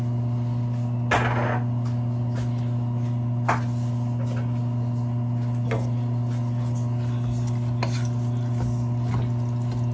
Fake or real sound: real